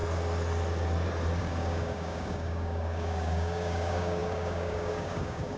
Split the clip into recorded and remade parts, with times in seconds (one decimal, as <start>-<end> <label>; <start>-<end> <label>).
0.0-1.4 recorded; 1.4-5.6 remade